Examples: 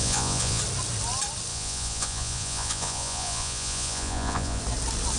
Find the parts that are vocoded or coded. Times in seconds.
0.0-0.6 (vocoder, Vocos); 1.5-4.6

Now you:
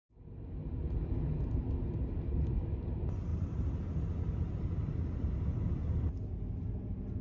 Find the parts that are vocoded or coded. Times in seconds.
none

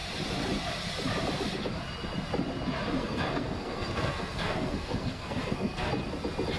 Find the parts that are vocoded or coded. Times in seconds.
3.0-5.9 (codec, SNAC)

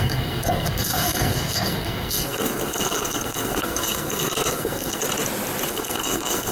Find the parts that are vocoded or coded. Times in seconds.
0.0-5.0 (codec, SNAC); 5.7-6.5